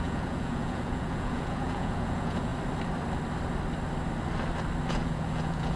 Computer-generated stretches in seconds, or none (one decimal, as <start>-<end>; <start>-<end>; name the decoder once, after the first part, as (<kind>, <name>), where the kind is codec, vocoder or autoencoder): 0.0-2.5 (vocoder, Vocos); 4.9-5.8

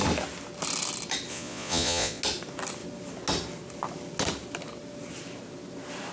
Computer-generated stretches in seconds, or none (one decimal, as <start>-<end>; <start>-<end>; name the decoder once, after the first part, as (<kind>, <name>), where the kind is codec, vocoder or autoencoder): 1.3-2.2 (vocoder, Vocos)

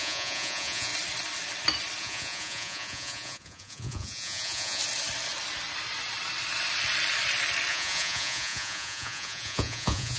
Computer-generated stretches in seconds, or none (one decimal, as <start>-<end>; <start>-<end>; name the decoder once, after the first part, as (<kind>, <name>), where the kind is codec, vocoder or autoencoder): 0.0-0.9 (vocoder, Vocos); 2.0-4.8; 7.7-10.2

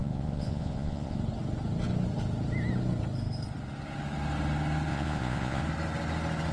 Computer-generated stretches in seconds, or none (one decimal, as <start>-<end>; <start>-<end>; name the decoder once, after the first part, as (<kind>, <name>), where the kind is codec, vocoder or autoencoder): 0.0-1.2 (vocoder, Vocos); 4.9-5.6

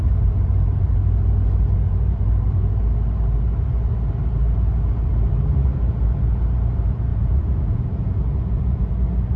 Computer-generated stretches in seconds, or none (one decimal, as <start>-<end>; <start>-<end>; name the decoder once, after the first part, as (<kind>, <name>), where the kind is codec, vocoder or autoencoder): 7.1-8.9 (vocoder, Vocos)

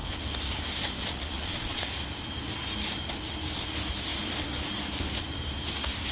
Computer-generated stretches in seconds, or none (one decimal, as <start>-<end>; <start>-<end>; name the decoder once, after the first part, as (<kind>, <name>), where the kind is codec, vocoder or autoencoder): 1.0-1.8 (vocoder, Vocos)

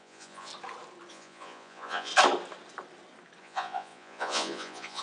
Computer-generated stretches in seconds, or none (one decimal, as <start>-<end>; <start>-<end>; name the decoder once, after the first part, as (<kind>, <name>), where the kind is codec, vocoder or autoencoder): 0.0-0.5 (vocoder, Vocos); 1.1-2.1; 3.4-5.0